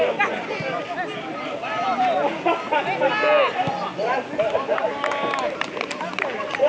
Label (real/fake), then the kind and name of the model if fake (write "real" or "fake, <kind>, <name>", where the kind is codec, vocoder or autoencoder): real